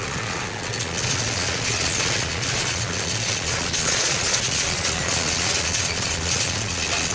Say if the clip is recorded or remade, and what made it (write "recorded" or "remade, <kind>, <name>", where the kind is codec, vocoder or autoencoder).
remade, vocoder, Vocos